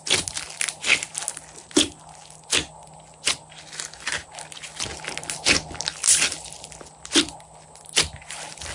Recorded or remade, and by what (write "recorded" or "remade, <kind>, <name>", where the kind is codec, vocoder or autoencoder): recorded